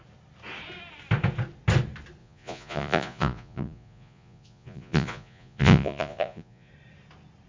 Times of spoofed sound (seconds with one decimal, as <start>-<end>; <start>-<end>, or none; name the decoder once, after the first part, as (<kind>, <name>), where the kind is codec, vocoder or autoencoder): 2.2-6.7 (vocoder, Vocos)